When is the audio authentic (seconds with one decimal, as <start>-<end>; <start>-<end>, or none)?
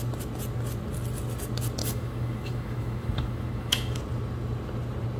0.0-1.8; 4.0-5.2